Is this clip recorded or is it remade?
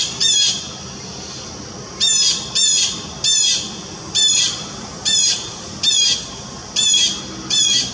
recorded